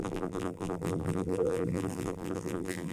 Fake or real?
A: fake